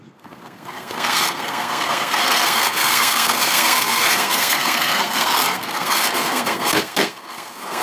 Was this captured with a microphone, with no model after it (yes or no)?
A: no